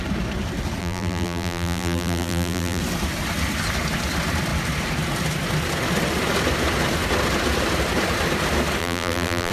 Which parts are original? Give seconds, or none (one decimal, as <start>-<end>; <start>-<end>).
0.0-0.8; 2.8-8.8